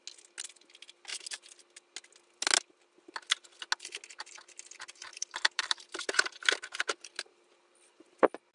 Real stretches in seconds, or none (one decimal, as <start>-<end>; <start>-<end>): 0.0-5.1; 6.5-8.5